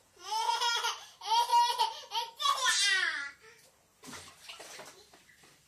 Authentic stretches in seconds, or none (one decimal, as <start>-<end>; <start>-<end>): 0.6-5.7